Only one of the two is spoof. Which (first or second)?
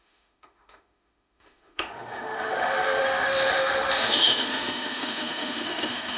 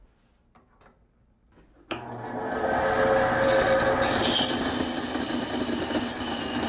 first